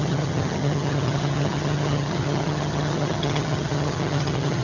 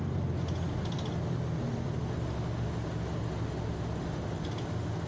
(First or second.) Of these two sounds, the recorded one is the second